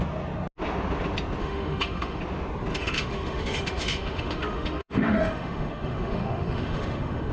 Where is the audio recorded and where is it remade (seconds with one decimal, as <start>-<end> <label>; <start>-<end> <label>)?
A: 0.0-1.4 recorded; 1.4-2.2 remade; 2.2-2.7 recorded; 2.7-7.3 remade